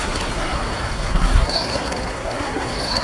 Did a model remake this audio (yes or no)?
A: yes